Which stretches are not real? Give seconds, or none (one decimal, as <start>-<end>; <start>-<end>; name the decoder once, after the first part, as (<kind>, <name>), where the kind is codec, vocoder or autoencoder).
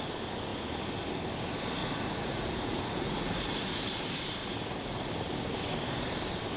1.8-3.8 (vocoder, Vocos); 4.4-5.1